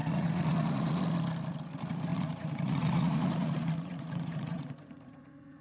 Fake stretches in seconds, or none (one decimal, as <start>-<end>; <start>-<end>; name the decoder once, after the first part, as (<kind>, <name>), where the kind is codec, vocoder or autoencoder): 0.0-1.0 (vocoder, Vocos); 2.1-5.6

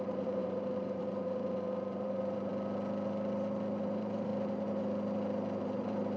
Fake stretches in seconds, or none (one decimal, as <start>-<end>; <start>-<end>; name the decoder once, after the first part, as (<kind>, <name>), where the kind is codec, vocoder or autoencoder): 0.0-2.5 (vocoder, BigVGAN v2); 3.8-4.3; 5.8-6.2